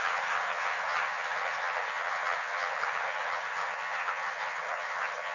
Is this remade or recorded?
remade